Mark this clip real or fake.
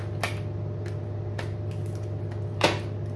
real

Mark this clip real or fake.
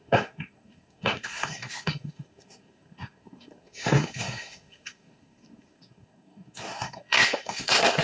fake